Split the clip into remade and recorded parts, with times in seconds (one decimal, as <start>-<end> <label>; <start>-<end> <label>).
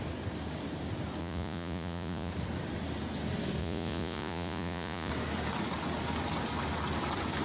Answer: 0.0-1.2 recorded; 1.2-2.3 remade; 2.3-3.6 recorded; 3.6-5.1 remade; 5.1-7.4 recorded